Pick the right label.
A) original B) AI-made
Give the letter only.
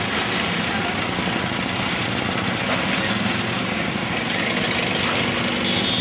A